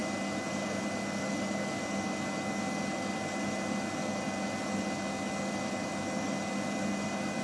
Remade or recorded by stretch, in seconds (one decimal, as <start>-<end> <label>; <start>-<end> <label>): 0.0-7.4 recorded